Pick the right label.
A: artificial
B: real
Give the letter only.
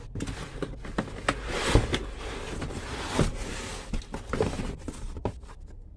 B